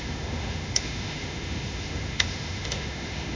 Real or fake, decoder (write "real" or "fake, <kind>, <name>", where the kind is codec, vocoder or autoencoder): fake, autoencoder, DAC-VAE